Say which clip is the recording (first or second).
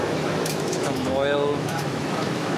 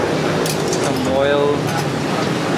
second